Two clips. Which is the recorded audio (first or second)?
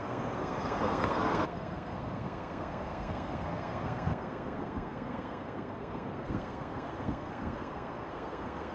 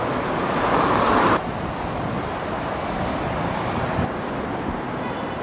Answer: second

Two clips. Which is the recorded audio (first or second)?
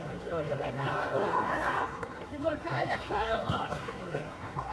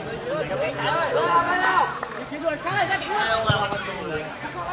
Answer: second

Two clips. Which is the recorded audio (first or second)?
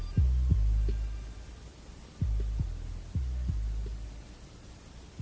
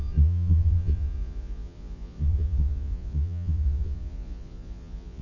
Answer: first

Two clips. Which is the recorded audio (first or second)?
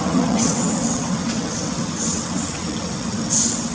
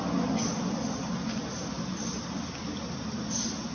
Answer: second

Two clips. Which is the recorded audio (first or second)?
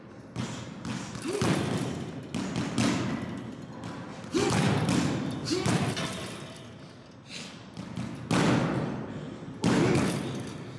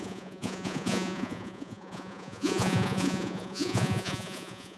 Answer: first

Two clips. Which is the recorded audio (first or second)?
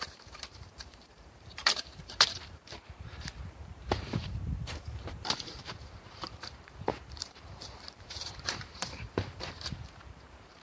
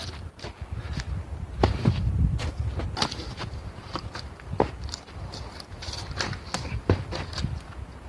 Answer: second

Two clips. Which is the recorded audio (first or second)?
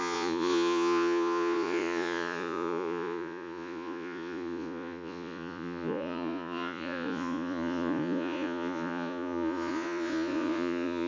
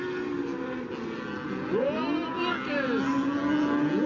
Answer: second